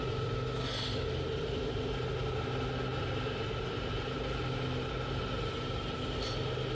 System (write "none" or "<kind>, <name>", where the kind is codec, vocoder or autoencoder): none